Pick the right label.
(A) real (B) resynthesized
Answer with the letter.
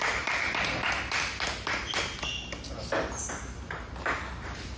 A